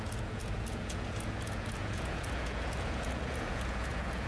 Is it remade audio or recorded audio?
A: remade